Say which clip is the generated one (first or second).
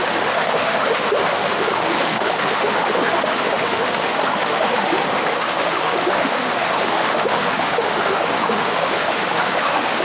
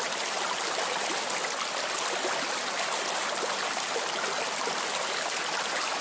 first